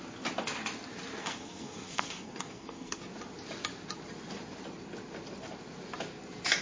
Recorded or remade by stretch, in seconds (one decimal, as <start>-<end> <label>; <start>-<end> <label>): 0.0-1.2 recorded; 1.2-3.0 remade; 3.0-6.6 recorded

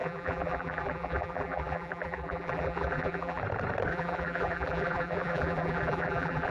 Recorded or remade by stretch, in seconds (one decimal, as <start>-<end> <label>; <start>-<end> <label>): 0.0-3.4 remade; 3.4-3.9 recorded; 3.9-6.5 remade

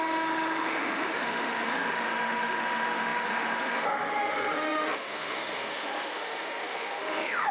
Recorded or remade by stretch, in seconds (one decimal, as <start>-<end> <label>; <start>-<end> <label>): 0.0-7.5 remade

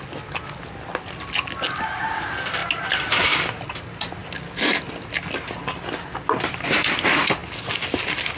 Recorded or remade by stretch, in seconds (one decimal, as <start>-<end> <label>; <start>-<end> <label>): 0.0-8.4 recorded

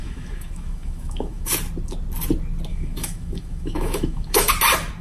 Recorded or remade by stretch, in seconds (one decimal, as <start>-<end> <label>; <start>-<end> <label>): 0.0-1.5 remade; 1.5-2.7 recorded; 2.7-4.5 remade; 4.5-5.0 recorded